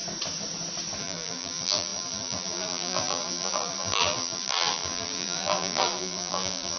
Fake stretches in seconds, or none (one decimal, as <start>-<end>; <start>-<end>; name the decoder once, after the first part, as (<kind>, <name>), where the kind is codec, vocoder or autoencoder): 1.0-6.8 (vocoder, BigVGAN v2)